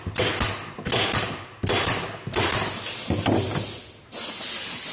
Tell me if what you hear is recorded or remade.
recorded